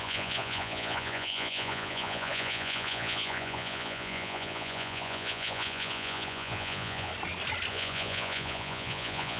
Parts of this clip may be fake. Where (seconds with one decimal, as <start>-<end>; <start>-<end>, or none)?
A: 0.0-7.1; 7.7-9.4